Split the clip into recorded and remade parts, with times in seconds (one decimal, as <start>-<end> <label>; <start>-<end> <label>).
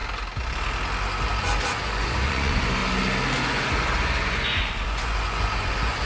0.0-1.4 recorded; 1.4-2.8 remade; 2.8-3.4 recorded; 3.4-6.1 remade